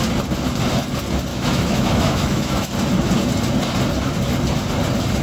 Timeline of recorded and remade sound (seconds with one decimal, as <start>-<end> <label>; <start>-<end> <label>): 0.0-1.3 recorded; 1.3-2.7 remade; 2.7-5.2 recorded